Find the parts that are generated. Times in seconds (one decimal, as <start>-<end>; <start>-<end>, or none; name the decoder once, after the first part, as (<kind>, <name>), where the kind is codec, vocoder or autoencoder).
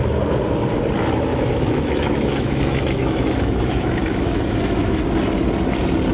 1.3-5.0 (autoencoder, DAC-VAE)